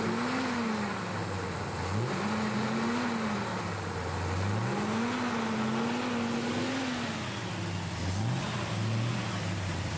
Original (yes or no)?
yes